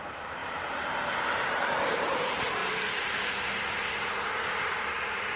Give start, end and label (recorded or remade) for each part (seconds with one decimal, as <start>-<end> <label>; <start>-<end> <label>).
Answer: 0.0-5.4 remade